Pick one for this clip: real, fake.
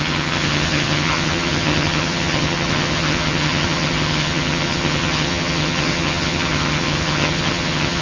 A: fake